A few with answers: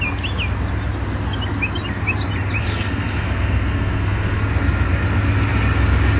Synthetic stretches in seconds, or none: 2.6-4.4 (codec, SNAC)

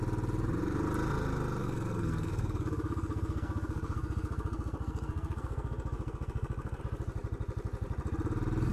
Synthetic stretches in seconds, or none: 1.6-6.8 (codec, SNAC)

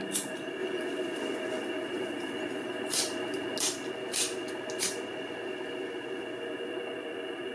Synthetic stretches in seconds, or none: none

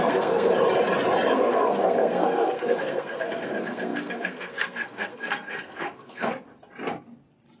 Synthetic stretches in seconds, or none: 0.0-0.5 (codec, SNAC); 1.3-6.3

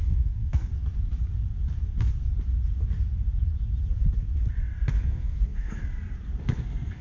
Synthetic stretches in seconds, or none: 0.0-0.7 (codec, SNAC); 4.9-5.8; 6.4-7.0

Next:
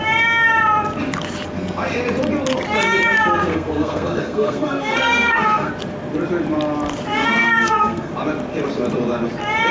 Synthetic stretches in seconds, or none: 3.5-5.7 (codec, SNAC); 7.2-8.1

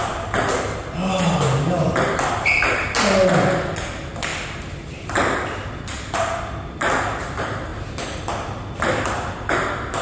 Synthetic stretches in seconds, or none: none

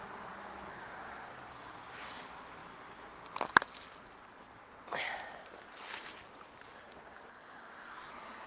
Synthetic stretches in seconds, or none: 0.7-1.3 (codec, SNAC); 7.3-8.1